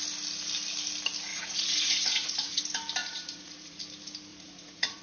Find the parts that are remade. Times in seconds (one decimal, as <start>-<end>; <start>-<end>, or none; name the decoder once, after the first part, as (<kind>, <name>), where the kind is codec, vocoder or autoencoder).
1.3-2.6 (vocoder, Vocos); 3.0-3.8; 4.3-5.0